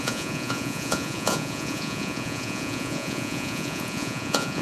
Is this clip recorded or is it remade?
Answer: remade